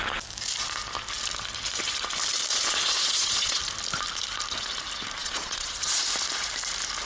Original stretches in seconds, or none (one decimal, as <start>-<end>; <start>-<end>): 0.0-2.5; 3.6-5.2; 6.0-7.1